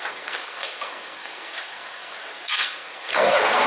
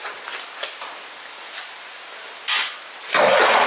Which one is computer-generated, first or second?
first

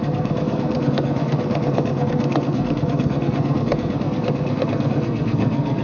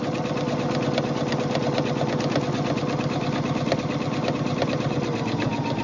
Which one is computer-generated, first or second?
first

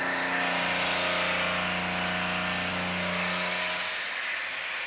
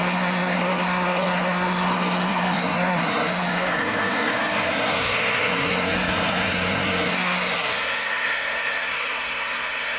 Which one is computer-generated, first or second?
second